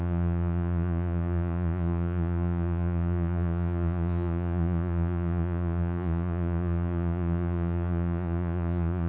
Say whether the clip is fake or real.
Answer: fake